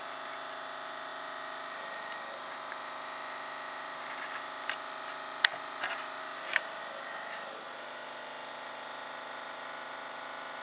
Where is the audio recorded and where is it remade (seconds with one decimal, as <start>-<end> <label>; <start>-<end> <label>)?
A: 0.0-6.8 remade; 6.8-8.5 recorded; 8.5-10.6 remade